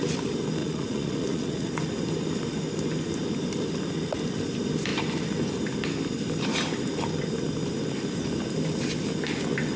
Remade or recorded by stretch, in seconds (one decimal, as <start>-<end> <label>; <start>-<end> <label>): 0.0-0.6 recorded; 0.6-1.7 remade; 1.7-9.8 recorded